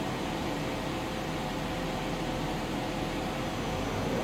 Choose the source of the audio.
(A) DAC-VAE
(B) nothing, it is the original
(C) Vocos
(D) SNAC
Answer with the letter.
B